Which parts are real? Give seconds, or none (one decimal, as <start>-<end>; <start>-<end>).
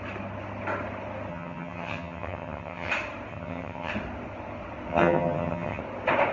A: 0.0-1.3; 2.9-3.3; 3.9-4.9; 5.8-6.3